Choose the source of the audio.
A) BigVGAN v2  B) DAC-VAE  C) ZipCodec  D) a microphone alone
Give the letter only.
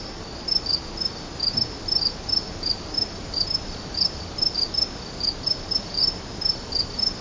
D